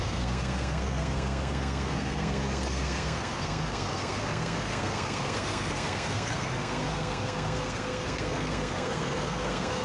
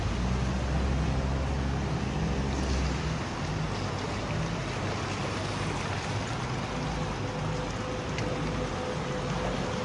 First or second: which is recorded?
second